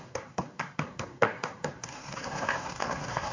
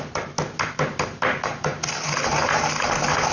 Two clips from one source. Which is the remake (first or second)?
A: first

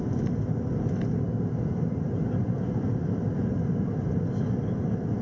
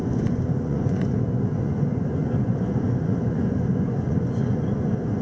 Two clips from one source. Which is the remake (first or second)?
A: second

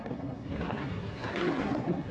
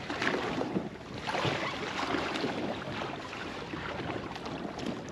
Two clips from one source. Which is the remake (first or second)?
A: first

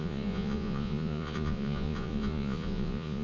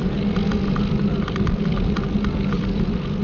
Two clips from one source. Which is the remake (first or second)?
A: first